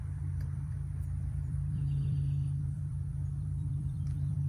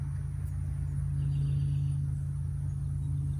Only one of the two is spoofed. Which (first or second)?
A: first